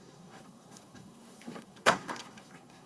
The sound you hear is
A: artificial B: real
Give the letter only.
A